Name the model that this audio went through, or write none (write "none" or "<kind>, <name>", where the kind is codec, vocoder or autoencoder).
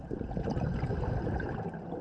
none